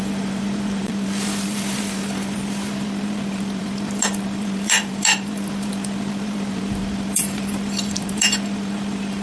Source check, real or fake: fake